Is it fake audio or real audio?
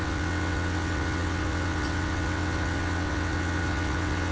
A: fake